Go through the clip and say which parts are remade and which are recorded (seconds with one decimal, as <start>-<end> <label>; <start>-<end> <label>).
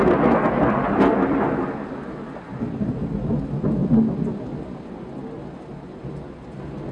0.0-6.9 recorded